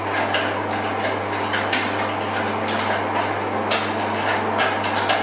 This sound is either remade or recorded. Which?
recorded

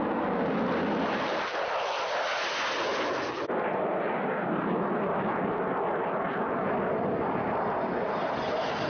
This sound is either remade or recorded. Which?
recorded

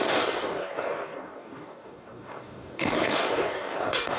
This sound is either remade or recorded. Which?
remade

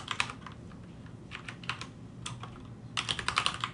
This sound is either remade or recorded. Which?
recorded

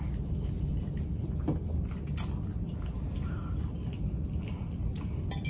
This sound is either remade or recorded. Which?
recorded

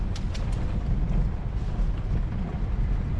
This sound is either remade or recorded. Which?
recorded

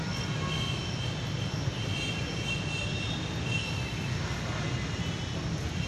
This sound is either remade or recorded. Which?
recorded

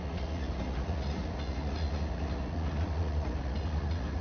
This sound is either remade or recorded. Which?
remade